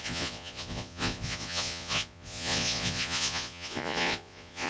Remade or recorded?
remade